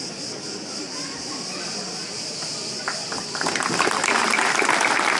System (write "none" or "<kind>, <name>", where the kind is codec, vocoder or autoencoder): none